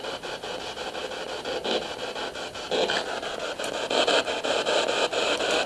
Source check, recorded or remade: recorded